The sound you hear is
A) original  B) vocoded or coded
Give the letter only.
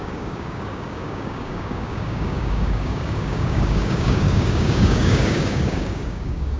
B